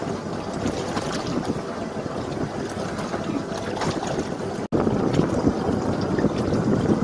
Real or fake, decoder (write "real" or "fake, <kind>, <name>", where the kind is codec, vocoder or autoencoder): real